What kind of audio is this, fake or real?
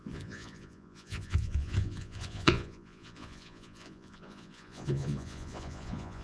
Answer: fake